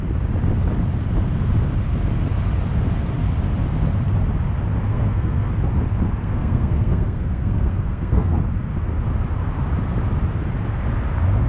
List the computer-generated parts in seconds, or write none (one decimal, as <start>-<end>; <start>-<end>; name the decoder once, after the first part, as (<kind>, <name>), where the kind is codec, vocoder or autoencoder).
4.9-5.5 (codec, SNAC); 6.2-8.4

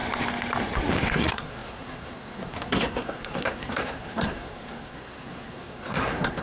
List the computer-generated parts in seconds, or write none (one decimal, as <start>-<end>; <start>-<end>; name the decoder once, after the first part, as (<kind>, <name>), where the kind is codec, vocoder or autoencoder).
1.1-6.4 (codec, SNAC)

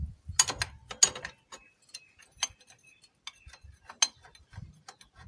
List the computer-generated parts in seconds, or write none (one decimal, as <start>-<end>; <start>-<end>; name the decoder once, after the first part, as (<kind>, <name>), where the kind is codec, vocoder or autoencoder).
none

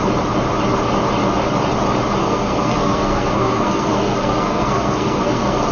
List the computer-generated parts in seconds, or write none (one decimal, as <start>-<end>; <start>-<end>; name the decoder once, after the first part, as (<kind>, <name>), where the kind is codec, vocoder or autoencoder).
2.2-5.7 (codec, SNAC)

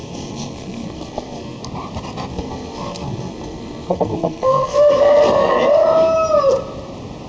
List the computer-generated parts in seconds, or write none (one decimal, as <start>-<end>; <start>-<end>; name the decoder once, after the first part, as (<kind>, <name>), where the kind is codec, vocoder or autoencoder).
0.0-1.6 (codec, SNAC); 2.3-5.7

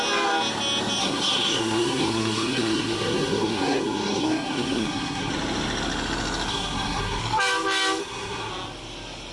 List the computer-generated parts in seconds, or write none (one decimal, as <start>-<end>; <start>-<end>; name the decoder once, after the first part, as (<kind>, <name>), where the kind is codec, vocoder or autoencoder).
1.0-5.3 (codec, SNAC); 6.5-7.2; 8.0-8.5